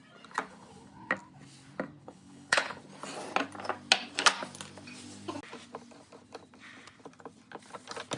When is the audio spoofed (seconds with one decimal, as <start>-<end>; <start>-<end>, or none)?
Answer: 0.5-1.1; 2.0-2.8